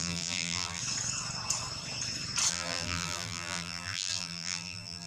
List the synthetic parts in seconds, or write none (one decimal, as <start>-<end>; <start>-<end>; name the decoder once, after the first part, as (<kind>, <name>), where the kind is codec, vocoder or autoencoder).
0.0-0.8 (vocoder, BigVGAN v2); 2.5-5.1